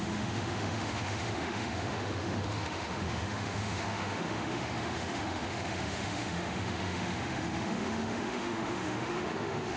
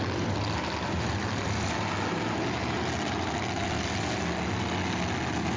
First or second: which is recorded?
second